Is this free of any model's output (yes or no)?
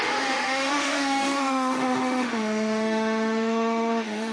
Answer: no